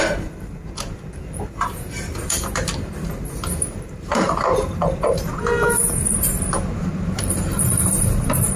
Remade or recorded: remade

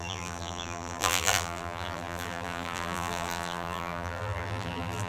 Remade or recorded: remade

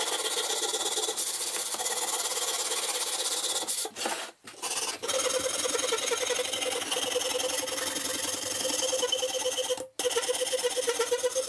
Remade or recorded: recorded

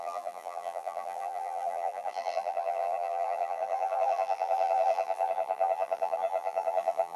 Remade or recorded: remade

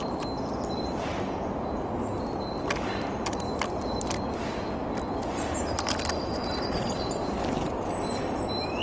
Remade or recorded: recorded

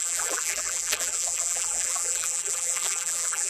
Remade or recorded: remade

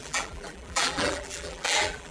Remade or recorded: remade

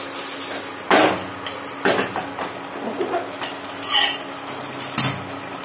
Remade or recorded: recorded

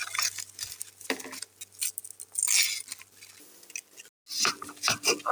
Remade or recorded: recorded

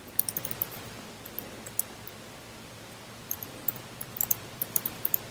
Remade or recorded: remade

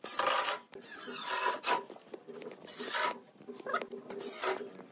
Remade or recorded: recorded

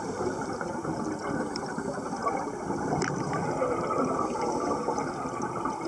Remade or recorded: remade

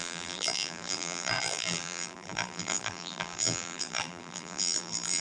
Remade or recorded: remade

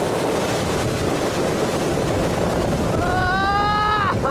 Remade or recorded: recorded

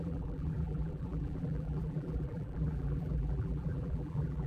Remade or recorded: remade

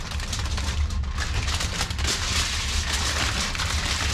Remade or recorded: recorded